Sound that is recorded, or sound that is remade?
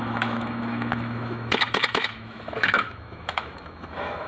remade